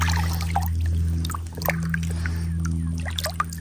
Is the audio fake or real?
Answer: real